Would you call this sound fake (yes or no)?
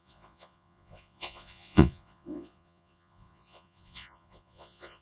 yes